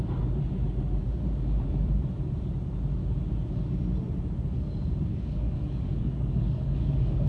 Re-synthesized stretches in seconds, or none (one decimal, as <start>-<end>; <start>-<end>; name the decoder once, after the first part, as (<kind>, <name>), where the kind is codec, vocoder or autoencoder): 5.1-7.3 (codec, DAC)